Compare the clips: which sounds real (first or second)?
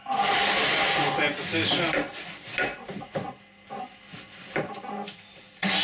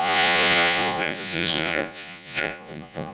first